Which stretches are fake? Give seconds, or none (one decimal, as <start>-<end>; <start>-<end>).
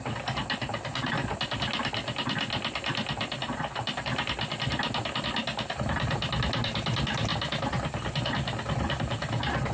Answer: none